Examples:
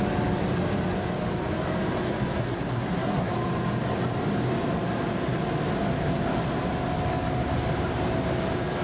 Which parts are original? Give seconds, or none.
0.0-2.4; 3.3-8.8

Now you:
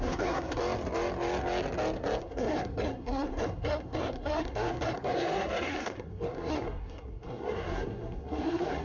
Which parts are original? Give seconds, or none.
0.6-2.2

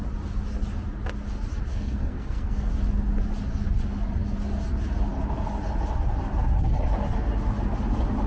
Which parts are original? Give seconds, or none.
0.0-1.7; 2.7-8.3

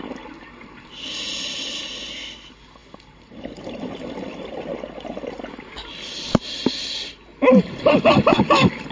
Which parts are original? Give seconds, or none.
0.0-8.9

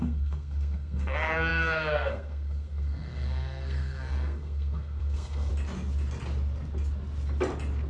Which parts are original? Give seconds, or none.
5.5-7.9

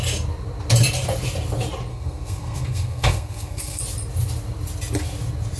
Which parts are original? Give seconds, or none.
0.0-1.9; 3.8-5.6

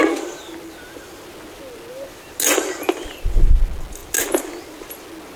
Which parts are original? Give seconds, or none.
0.0-5.4